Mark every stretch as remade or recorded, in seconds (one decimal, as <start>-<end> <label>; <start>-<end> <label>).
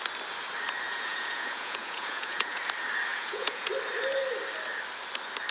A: 0.0-0.9 recorded; 0.9-2.6 remade; 2.6-3.1 recorded; 3.1-3.7 remade; 3.7-5.5 recorded